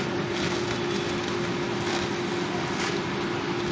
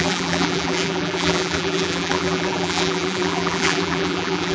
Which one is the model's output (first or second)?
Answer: second